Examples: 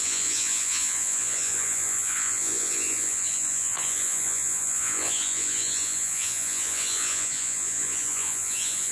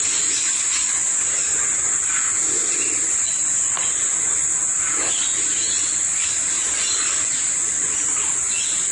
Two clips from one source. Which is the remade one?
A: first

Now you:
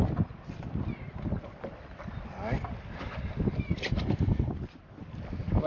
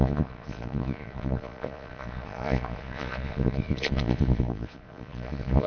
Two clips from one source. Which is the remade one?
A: second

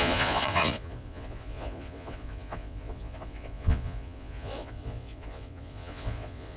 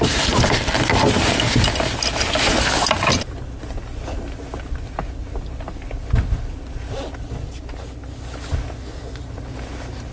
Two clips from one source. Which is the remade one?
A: first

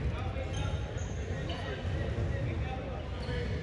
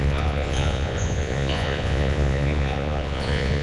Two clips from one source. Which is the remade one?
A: second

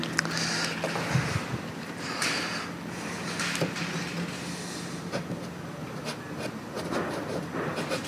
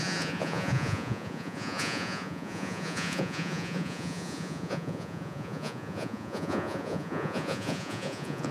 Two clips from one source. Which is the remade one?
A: second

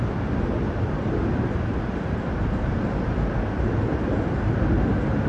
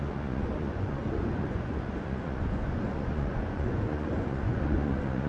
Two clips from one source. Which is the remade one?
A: second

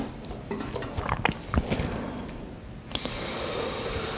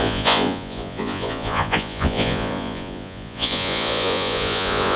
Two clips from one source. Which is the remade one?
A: second